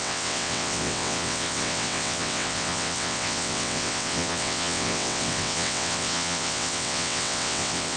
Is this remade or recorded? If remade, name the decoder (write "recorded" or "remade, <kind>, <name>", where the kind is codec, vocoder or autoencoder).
remade, vocoder, WaveNeXt